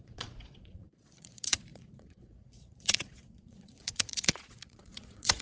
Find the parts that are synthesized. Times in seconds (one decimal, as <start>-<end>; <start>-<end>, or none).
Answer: 0.0-5.4